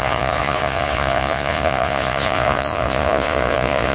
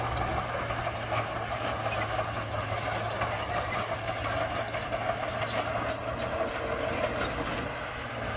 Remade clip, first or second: first